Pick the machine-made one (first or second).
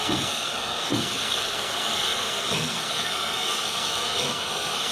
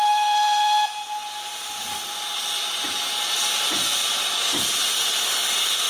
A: first